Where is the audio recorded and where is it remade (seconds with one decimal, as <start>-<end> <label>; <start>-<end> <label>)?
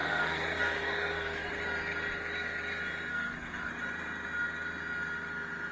0.0-1.5 remade; 1.5-3.1 recorded; 3.1-3.7 remade; 3.7-5.7 recorded